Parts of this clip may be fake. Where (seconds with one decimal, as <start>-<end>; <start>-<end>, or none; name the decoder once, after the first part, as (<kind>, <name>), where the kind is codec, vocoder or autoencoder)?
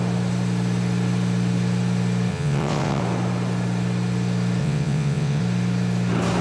2.3-3.0 (vocoder, WaveNeXt); 4.6-5.4